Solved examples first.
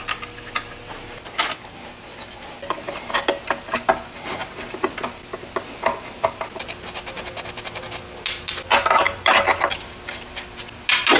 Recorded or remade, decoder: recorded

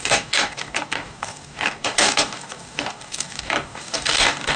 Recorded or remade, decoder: remade, codec, DAC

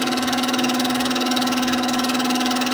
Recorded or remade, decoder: remade, codec, DAC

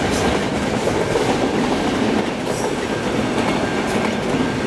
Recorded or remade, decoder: recorded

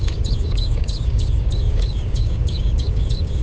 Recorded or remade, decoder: remade, codec, DAC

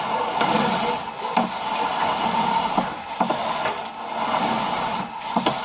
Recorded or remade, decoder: recorded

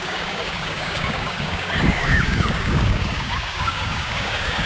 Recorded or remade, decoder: remade, codec, DAC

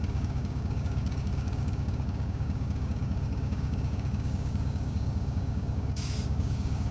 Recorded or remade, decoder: remade, codec, DAC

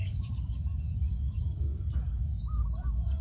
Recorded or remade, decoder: remade, codec, DAC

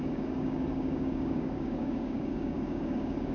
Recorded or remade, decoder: remade, codec, DAC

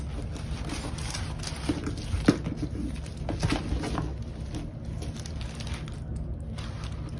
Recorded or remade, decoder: recorded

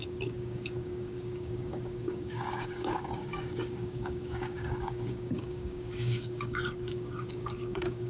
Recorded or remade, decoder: remade, codec, DAC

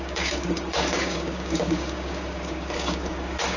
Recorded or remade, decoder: remade, codec, DAC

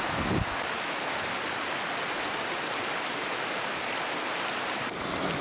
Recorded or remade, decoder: recorded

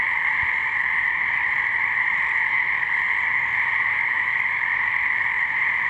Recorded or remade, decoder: recorded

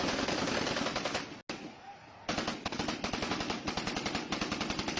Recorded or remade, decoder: recorded